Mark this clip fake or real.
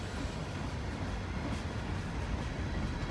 real